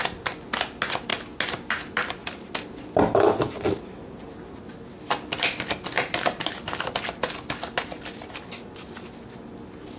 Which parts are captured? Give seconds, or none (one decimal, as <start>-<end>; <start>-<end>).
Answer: 0.0-10.0